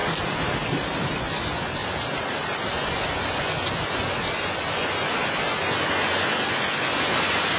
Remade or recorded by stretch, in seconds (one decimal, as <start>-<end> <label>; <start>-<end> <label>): 0.0-1.0 recorded; 1.0-1.8 remade; 1.8-2.7 recorded; 2.7-7.6 remade